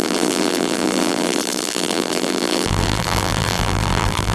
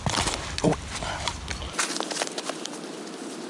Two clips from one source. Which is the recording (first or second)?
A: second